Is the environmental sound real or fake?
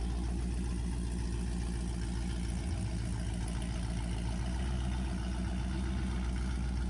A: real